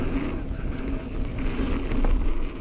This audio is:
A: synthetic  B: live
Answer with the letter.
B